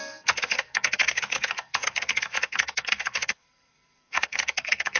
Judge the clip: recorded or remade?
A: remade